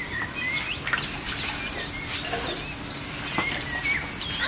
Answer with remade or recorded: recorded